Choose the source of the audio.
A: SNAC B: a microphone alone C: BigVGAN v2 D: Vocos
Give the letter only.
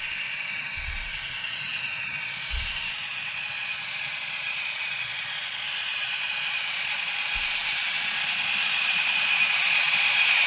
D